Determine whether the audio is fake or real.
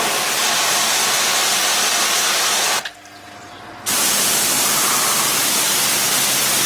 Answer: real